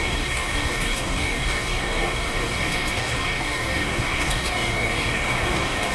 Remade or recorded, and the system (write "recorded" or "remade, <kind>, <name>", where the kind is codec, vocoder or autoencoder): remade, codec, DAC